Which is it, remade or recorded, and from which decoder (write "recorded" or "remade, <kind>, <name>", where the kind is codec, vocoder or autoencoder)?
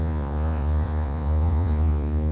remade, vocoder, Vocos